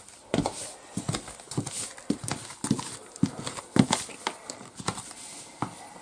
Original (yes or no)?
yes